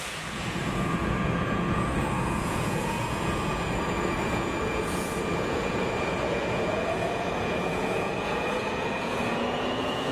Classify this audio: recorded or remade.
remade